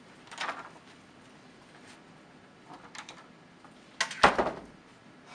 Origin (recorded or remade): recorded